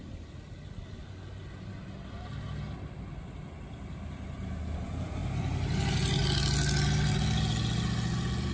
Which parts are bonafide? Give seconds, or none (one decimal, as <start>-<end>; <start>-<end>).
0.0-8.5